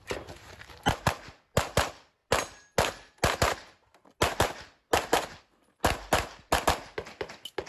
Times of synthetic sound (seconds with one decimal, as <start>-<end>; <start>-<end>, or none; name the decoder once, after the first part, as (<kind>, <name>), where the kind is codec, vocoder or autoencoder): none

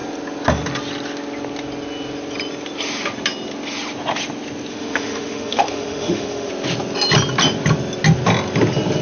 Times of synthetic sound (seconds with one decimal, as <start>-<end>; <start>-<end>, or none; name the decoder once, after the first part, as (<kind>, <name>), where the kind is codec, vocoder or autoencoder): 4.7-6.5 (autoencoder, DAC-VAE)

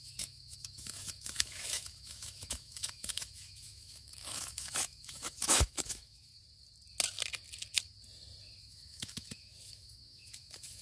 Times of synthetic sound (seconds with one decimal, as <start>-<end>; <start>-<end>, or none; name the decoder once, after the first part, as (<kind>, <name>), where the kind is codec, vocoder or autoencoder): 0.0-6.3 (autoencoder, DAC-VAE); 8.6-10.8

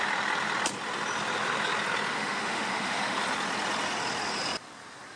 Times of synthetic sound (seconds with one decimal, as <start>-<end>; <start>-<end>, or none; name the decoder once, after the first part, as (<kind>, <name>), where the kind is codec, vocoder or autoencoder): 2.1-3.2 (autoencoder, DAC-VAE)